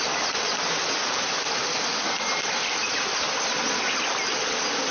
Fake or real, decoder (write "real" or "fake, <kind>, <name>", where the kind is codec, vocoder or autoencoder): real